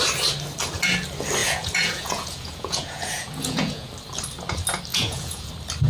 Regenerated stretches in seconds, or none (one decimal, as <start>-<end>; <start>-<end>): 1.4-3.9; 4.9-5.5